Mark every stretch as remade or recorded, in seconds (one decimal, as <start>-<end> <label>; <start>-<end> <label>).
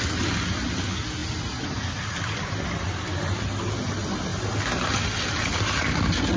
0.0-6.4 recorded